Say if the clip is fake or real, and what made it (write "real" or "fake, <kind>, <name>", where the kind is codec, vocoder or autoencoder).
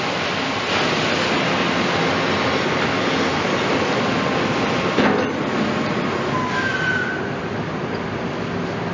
real